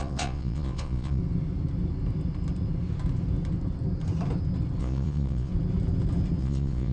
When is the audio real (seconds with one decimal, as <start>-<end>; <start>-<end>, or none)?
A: 1.2-4.8; 5.5-6.4